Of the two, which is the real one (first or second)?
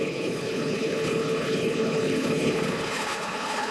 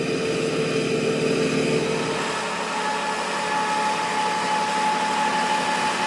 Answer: second